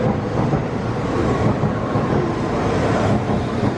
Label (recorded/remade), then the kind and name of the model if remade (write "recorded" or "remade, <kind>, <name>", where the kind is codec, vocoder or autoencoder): recorded